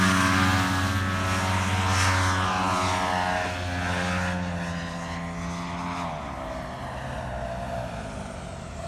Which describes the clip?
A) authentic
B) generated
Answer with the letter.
A